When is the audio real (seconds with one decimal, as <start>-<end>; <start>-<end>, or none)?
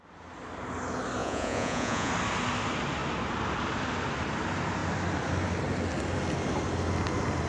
0.0-1.2; 2.1-7.5